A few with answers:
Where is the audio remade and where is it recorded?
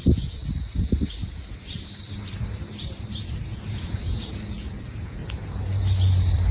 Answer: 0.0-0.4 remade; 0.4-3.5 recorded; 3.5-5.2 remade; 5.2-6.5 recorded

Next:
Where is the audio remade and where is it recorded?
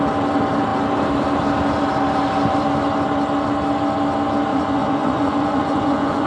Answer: 0.0-4.5 recorded; 4.5-6.3 remade